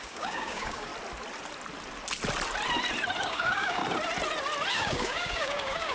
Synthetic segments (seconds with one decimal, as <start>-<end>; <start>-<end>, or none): 0.0-0.9; 3.2-3.8; 4.7-5.9

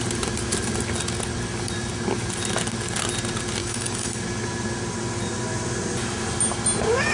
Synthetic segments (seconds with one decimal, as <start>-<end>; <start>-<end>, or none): 3.6-4.2

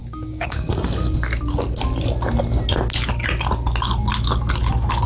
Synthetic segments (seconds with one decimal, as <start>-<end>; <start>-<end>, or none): 0.0-0.7

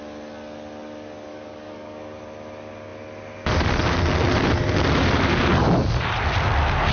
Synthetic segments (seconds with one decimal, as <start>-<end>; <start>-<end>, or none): 1.3-2.2

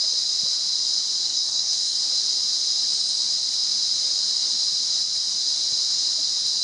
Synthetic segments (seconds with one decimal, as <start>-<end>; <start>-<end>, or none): 1.3-2.0

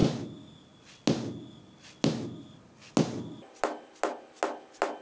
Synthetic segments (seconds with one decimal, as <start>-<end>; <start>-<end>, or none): none

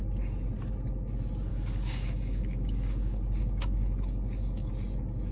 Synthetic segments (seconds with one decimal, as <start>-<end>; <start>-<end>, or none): 1.5-4.7